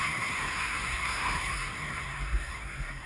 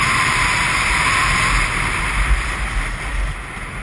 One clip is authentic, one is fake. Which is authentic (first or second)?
second